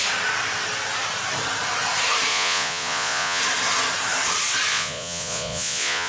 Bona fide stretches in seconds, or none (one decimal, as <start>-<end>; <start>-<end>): 0.0-2.3; 3.4-4.7